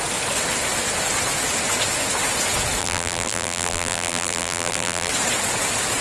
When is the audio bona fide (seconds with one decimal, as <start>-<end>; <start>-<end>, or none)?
0.0-2.8; 5.1-6.0